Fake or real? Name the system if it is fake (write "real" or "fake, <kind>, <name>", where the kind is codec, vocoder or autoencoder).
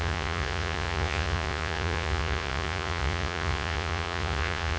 fake, vocoder, Vocos